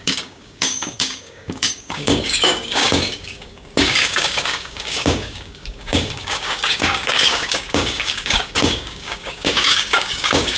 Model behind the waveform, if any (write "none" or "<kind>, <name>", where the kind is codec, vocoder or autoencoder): codec, DAC